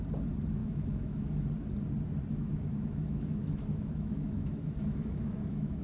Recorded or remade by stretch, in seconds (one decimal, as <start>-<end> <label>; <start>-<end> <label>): 0.0-0.6 recorded; 0.6-1.5 remade; 1.5-2.3 recorded; 2.3-5.8 remade